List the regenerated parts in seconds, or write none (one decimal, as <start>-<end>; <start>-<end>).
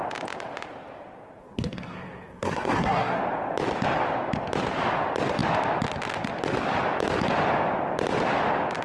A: 1.4-3.2